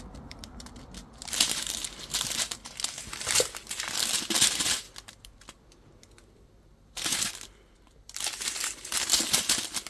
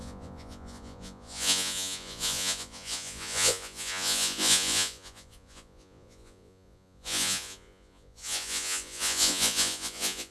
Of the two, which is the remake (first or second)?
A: second